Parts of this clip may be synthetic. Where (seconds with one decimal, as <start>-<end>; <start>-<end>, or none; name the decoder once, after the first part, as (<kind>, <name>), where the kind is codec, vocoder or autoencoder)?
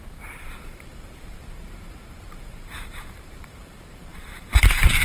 0.0-5.0 (vocoder, BigVGAN v2)